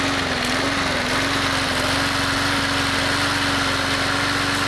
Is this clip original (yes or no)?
yes